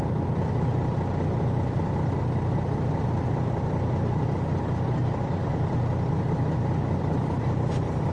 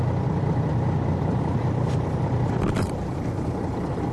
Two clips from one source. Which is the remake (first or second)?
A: second